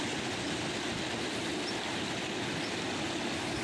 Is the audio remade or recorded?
recorded